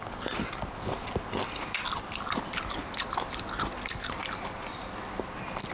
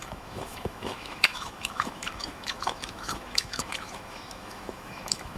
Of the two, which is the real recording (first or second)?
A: first